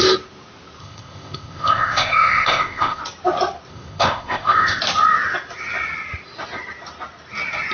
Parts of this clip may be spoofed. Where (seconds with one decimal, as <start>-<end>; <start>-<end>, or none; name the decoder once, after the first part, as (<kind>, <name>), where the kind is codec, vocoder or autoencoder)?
0.8-3.0 (codec, ZipCodec); 3.7-4.8